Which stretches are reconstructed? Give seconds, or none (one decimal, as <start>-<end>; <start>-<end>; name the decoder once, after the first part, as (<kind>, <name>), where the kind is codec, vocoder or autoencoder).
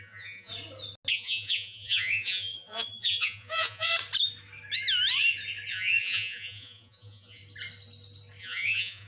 0.0-0.5 (vocoder, Vocos); 1.1-3.9; 5.7-7.4; 8.4-9.1